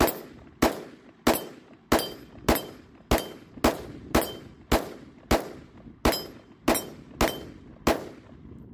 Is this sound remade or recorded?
recorded